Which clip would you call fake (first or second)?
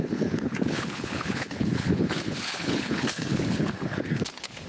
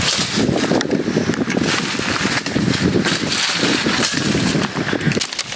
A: first